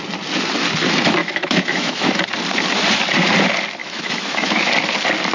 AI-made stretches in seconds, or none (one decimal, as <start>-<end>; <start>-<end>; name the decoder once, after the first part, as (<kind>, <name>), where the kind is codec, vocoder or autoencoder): 1.2-2.1 (autoencoder, DAC-VAE); 3.8-4.7